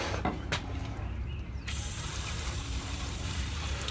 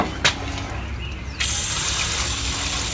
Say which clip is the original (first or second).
second